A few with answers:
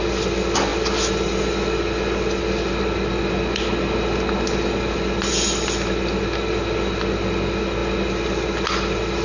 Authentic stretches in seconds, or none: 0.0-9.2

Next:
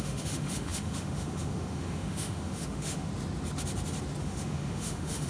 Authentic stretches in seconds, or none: 3.1-4.2

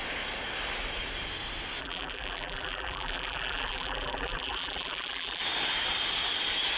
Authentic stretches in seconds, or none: 0.0-1.8; 5.4-6.8

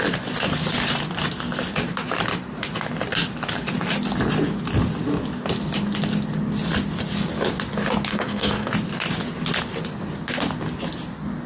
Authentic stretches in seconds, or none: 0.0-8.1; 8.7-11.5

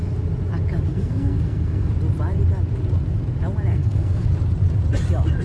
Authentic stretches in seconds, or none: 0.0-0.9; 1.9-3.7; 4.3-5.4

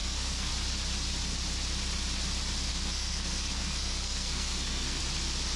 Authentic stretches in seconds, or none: 0.5-2.7; 5.0-5.6